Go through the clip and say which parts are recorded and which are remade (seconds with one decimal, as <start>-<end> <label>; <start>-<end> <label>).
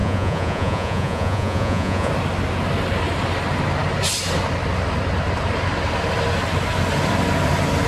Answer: 0.0-2.1 remade; 2.1-7.9 recorded